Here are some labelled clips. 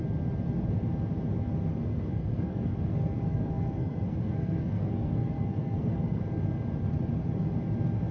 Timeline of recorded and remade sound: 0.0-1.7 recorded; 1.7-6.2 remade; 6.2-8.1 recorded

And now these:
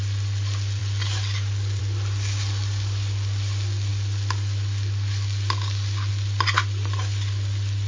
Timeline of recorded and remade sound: 0.0-7.9 recorded

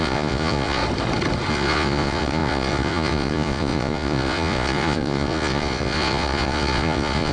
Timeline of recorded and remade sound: 0.0-0.8 remade; 0.8-1.5 recorded; 1.5-7.3 remade